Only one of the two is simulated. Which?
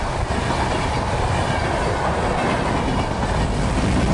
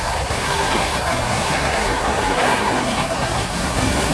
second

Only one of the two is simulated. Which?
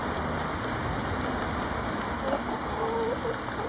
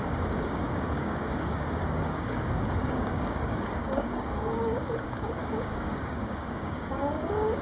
second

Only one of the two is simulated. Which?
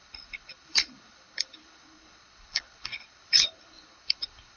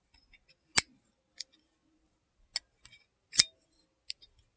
first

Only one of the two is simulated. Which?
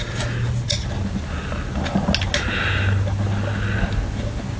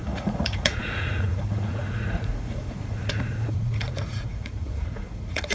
second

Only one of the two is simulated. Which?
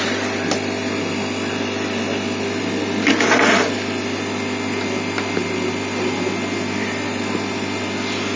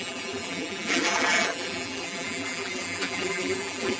second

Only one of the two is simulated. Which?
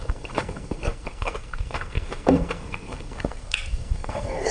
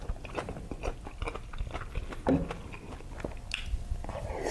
first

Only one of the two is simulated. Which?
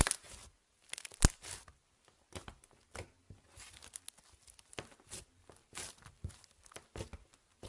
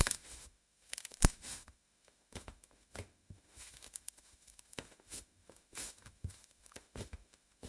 second